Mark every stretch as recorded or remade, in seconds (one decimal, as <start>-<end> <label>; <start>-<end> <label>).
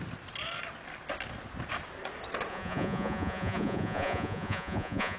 0.0-2.5 recorded; 2.5-5.2 remade